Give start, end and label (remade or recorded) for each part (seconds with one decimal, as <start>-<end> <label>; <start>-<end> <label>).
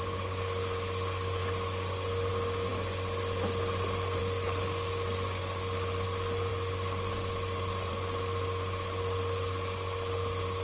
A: 0.0-10.6 recorded